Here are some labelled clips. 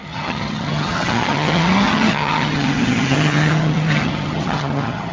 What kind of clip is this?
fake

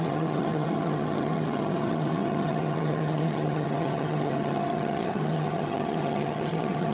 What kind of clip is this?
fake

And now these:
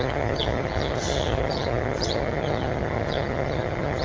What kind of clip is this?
fake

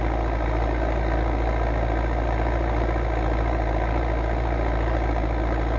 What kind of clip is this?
real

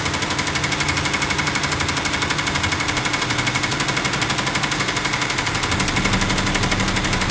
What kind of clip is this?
real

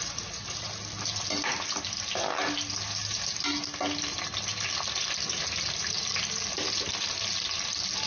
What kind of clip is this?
real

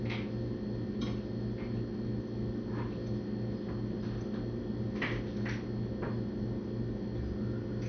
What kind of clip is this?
real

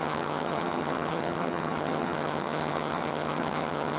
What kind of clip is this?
fake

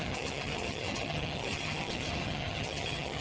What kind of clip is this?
fake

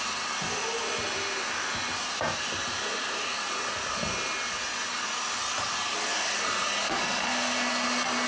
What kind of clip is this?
real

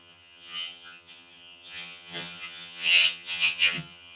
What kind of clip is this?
fake